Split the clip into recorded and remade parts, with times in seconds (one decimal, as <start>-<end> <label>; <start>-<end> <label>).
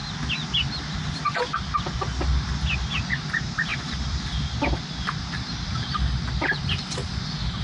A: 0.0-3.7 recorded; 3.7-5.7 remade; 5.7-7.6 recorded